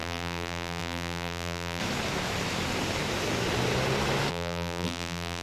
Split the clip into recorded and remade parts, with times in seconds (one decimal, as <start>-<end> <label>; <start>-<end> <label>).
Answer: 0.0-1.8 remade; 1.8-4.3 recorded; 4.3-5.4 remade

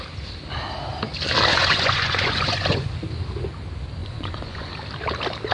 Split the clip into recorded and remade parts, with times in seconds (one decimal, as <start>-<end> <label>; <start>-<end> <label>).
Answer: 0.0-1.5 recorded; 1.5-2.9 remade; 2.9-4.0 recorded; 4.0-4.7 remade; 4.7-5.5 recorded